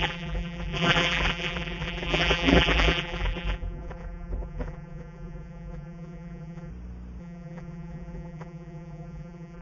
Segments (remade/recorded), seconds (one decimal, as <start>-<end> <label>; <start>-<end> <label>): 0.0-6.7 remade; 6.7-7.2 recorded; 7.2-9.6 remade